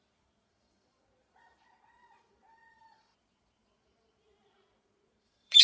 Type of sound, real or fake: fake